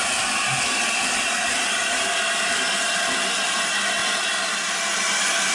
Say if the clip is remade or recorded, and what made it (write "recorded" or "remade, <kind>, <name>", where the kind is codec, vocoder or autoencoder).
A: recorded